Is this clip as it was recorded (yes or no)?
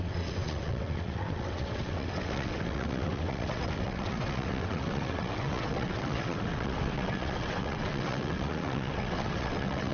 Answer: no